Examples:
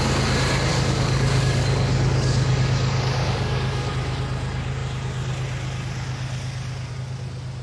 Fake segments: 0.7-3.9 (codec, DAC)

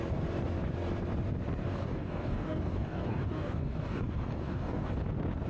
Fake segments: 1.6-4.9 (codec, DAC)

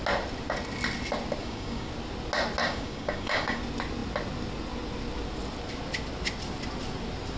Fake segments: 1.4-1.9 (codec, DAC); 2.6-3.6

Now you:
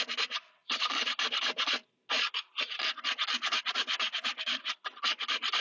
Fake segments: none

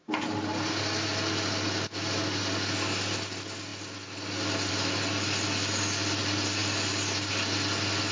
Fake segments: none